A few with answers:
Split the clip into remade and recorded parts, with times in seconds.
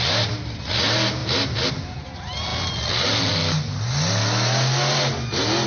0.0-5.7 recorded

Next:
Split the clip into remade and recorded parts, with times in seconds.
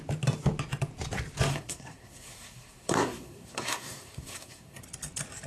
0.0-1.5 recorded; 1.5-4.8 remade; 4.8-5.5 recorded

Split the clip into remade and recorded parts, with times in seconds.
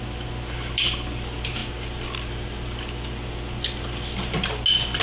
0.0-5.0 recorded